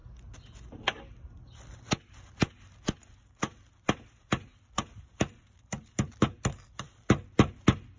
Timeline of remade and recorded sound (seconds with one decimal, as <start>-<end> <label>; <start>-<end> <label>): 0.0-8.0 recorded